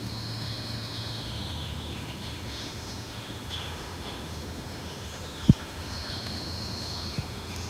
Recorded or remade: remade